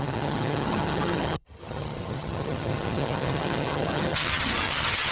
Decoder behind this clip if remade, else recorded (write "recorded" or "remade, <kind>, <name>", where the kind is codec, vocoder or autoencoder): remade, vocoder, HiFi-GAN